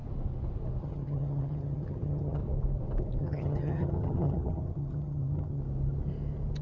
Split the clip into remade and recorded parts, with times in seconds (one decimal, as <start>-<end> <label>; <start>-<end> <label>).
0.0-0.8 recorded; 0.8-2.4 remade; 2.4-3.2 recorded; 3.2-5.6 remade; 5.6-6.6 recorded